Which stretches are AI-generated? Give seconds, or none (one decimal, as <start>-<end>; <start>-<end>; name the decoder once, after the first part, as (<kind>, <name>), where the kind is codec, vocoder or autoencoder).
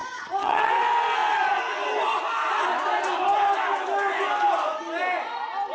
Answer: 0.0-0.7 (vocoder, HiFi-GAN)